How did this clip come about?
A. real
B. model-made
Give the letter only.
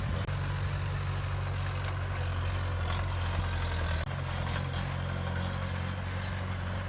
A